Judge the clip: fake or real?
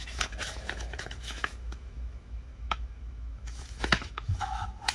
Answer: fake